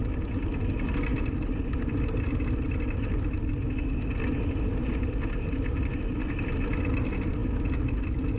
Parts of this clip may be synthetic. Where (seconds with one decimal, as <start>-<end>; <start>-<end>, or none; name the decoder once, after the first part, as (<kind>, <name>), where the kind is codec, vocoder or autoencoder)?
none